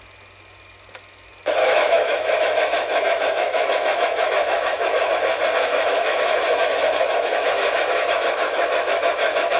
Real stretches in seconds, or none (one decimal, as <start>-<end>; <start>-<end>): 0.0-1.6; 5.1-5.7